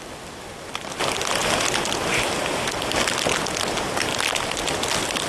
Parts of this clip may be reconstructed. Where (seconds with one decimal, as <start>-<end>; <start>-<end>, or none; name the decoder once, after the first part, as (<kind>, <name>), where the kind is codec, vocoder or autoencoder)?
none